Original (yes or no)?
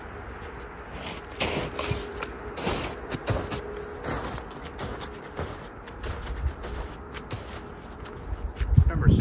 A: yes